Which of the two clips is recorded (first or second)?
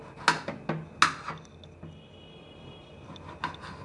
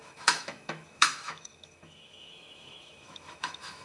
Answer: first